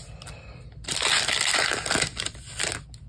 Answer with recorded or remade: recorded